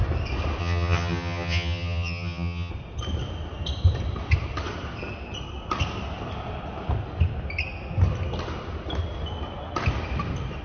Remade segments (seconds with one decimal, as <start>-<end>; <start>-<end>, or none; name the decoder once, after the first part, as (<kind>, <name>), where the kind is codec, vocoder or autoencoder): 0.6-2.7 (vocoder, HiFi-GAN)